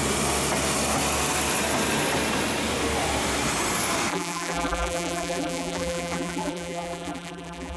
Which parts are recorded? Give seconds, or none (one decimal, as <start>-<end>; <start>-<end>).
0.0-4.1